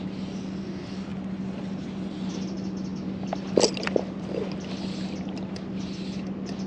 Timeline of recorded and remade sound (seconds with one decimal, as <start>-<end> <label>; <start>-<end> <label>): 0.0-6.7 recorded